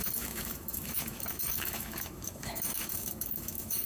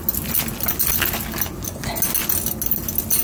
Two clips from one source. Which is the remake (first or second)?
first